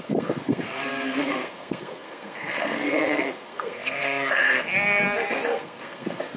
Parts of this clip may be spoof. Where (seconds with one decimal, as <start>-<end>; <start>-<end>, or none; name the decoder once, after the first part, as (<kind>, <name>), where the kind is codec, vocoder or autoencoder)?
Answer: 0.0-6.4 (codec, SNAC)